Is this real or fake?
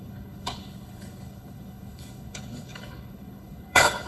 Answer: fake